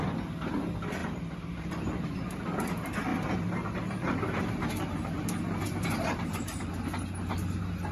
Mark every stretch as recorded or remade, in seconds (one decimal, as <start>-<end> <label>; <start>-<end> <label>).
0.0-1.0 recorded; 1.0-2.7 remade; 2.7-3.1 recorded; 3.1-6.7 remade; 6.7-7.9 recorded

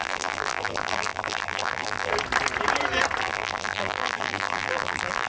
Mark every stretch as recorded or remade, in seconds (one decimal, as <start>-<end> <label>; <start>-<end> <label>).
0.0-2.1 remade; 2.1-3.2 recorded; 3.2-5.3 remade

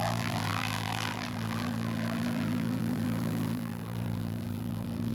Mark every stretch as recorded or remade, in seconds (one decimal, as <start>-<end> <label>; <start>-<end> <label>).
0.0-5.1 remade

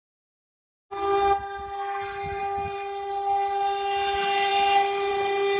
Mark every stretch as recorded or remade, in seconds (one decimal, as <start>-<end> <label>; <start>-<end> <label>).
0.0-5.6 recorded

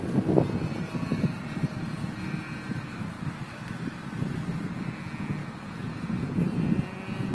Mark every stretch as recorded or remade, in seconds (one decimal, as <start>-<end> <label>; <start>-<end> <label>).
0.0-1.1 recorded; 1.1-4.7 remade; 4.7-5.4 recorded; 5.4-6.2 remade; 6.2-7.3 recorded

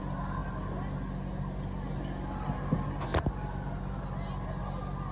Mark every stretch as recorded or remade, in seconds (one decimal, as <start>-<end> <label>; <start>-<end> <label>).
0.0-5.1 recorded

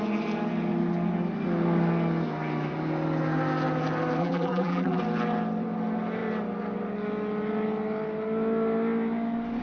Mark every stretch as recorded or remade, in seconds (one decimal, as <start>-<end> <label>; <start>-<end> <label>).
0.0-4.2 recorded; 4.2-5.0 remade; 5.0-9.6 recorded